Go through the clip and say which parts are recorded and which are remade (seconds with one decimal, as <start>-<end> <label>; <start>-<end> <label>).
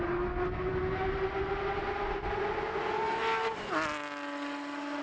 0.0-5.0 recorded